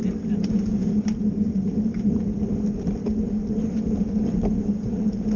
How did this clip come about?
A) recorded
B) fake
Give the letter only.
A